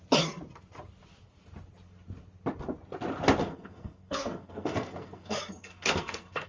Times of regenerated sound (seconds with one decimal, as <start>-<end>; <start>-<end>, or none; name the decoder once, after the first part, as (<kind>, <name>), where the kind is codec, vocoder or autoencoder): 3.4-6.5 (codec, SNAC)